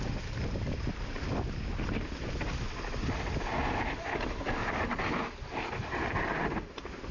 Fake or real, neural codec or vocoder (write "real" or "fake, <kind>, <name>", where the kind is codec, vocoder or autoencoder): real